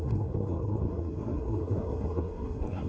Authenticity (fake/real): fake